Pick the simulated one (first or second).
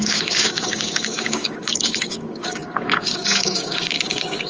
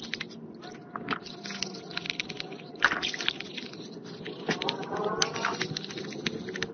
first